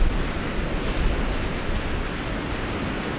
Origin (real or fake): real